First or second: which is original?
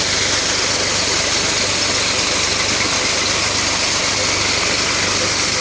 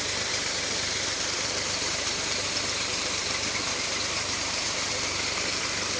first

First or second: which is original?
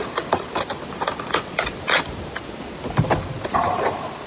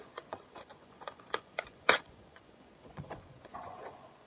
first